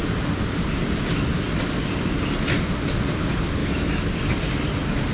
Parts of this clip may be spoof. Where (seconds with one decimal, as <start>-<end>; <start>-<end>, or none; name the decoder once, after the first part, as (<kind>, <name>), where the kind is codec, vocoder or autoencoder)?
3.6-4.1 (autoencoder, DAC-VAE)